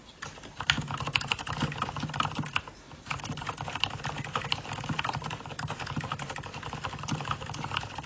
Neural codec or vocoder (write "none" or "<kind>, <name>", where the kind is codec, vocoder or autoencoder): none